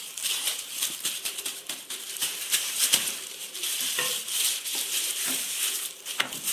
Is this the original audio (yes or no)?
no